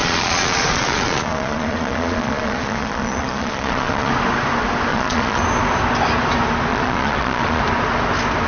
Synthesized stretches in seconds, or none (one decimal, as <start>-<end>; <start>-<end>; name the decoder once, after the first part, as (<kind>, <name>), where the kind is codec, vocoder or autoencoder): 0.0-4.1 (vocoder, Vocos); 4.9-5.4; 6.7-7.6